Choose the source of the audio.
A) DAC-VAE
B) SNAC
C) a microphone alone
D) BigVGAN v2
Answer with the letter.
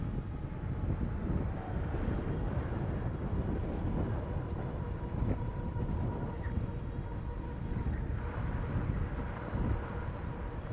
C